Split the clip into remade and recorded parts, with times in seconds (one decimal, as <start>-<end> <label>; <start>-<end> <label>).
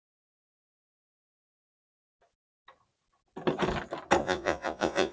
0.0-1.9 remade; 1.9-4.2 recorded; 4.2-5.1 remade